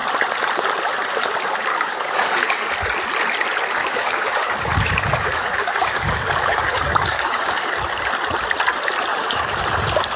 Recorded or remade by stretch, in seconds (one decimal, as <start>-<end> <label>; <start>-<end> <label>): 0.0-1.7 recorded; 1.7-2.7 remade; 2.7-3.8 recorded; 3.8-7.8 remade; 7.8-9.1 recorded; 9.1-9.6 remade; 9.6-10.2 recorded